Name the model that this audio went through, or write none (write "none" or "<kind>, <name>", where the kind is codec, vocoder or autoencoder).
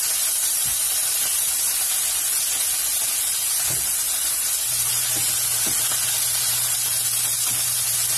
none